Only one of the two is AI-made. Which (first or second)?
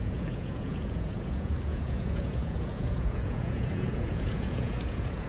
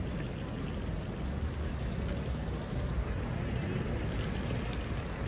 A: first